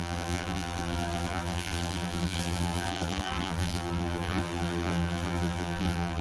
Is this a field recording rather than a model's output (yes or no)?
no